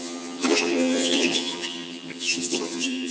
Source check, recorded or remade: remade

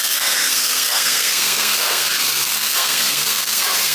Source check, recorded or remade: remade